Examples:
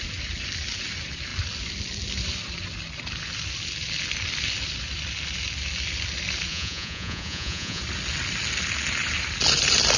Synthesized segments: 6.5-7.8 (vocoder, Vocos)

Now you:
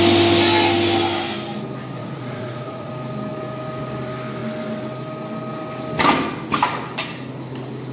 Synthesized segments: 2.0-2.9 (vocoder, Vocos)